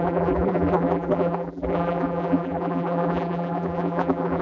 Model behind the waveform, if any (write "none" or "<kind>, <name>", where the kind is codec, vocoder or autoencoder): vocoder, BigVGAN v2